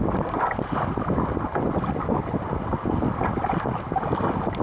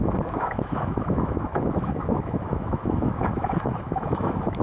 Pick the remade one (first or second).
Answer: second